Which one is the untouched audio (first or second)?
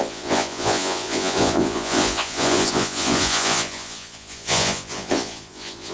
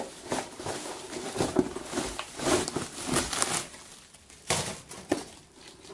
second